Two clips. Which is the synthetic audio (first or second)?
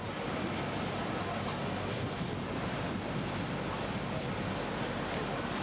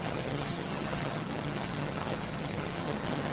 second